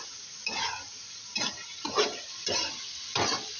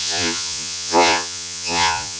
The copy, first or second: second